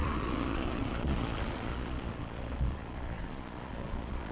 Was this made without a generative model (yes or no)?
no